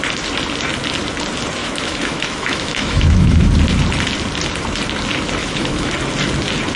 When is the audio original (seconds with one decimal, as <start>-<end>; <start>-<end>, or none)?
0.0-1.6; 3.5-5.4; 5.9-6.8